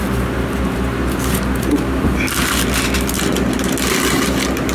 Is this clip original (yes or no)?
yes